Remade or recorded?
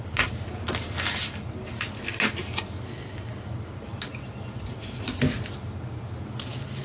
recorded